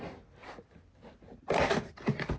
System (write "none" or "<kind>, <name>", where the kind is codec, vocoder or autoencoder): none